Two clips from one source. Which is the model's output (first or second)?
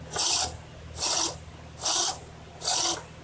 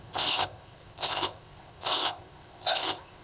second